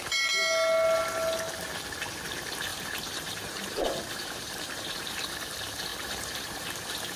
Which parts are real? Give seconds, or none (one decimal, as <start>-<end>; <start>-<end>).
0.0-2.7; 5.2-5.9